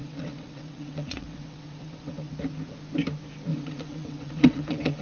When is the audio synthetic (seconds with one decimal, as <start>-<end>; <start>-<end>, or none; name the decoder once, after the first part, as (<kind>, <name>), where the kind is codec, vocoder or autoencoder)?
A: 0.0-2.3 (vocoder, WaveNeXt); 3.5-5.0

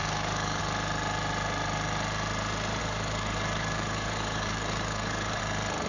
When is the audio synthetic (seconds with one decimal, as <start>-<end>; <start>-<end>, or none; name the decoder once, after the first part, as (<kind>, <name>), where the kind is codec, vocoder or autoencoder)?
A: 0.0-0.6 (codec, DAC); 2.8-5.4

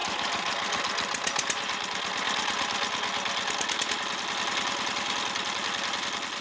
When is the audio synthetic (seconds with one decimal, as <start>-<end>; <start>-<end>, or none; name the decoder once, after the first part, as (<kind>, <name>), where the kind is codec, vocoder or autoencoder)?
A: none

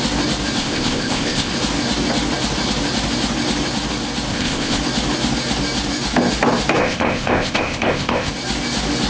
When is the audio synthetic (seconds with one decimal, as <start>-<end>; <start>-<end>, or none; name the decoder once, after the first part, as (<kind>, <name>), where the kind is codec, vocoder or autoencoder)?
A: 0.6-1.5 (codec, ZipCodec); 4.3-4.8; 6.8-8.3

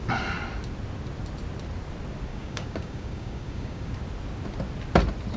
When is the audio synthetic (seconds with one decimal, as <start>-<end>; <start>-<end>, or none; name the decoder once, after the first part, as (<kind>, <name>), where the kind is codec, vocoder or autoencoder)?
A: 2.3-3.9 (codec, DAC)

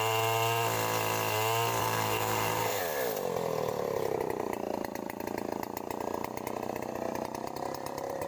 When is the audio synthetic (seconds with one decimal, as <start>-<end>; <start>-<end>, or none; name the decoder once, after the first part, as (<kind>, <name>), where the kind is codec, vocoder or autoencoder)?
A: 1.8-2.8 (codec, SNAC)

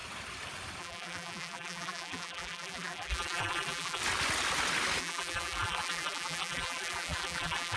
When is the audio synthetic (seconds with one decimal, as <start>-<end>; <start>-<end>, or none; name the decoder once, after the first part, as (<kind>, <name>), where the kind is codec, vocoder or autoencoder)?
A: 0.8-4.0 (vocoder, BigVGAN v2); 5.0-7.8

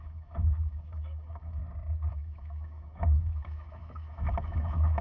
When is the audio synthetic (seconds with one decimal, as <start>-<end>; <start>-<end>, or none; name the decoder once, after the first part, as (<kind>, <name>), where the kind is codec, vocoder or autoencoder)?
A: 0.0-1.6 (autoencoder, DAC-VAE); 2.1-5.0